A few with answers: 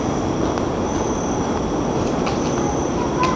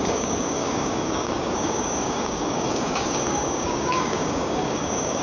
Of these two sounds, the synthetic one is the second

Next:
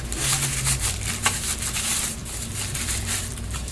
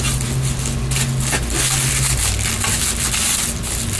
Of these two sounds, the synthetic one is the first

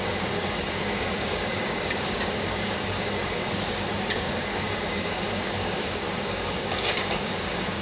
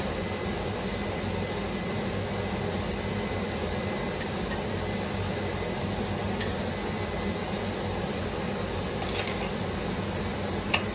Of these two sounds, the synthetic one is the first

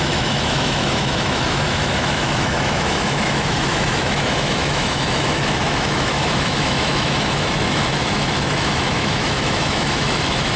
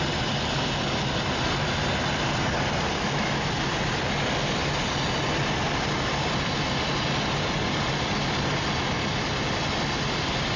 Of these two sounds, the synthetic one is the first